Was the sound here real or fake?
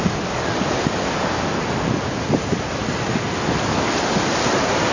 real